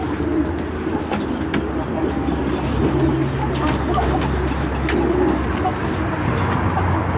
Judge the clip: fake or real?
real